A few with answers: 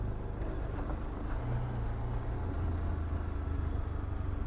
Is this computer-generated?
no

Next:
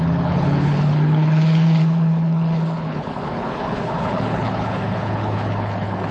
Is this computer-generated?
yes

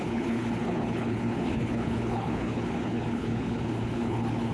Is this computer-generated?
yes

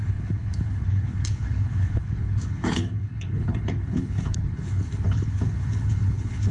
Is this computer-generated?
yes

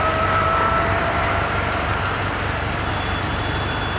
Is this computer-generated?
no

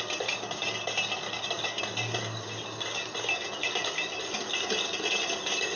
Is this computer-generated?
no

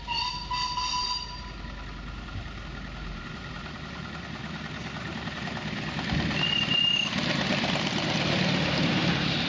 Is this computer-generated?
no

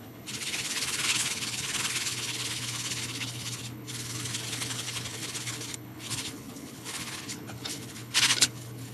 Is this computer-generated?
yes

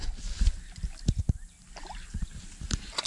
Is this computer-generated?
no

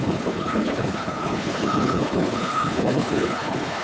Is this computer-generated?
yes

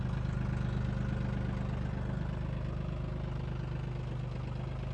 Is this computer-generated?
no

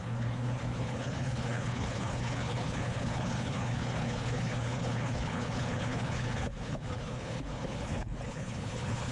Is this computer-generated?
yes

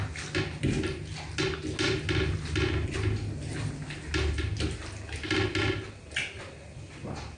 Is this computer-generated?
no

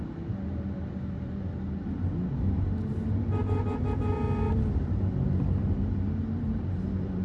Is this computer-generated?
no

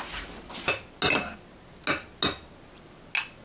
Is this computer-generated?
no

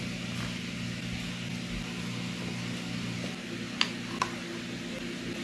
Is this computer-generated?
no